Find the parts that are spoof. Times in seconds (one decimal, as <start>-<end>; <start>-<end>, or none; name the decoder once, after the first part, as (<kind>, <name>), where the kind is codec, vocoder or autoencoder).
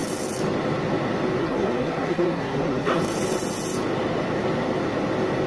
1.4-3.0 (codec, SNAC)